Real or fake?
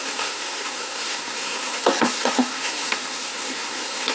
fake